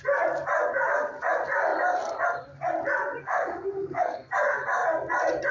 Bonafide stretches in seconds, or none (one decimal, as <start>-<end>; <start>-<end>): 0.0-3.2; 4.3-5.5